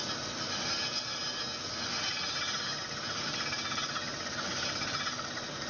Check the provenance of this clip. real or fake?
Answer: real